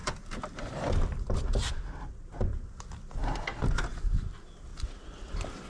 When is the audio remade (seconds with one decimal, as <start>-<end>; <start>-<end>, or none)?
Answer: 0.0-2.1; 3.2-4.3; 4.7-5.3